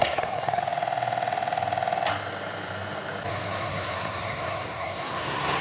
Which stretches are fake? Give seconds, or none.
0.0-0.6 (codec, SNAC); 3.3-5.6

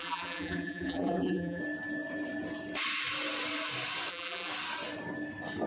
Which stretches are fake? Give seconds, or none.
0.0-1.6 (vocoder, BigVGAN v2); 4.1-4.5

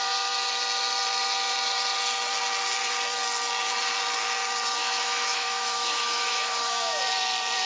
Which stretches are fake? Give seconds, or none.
4.8-7.0 (autoencoder, DAC-VAE)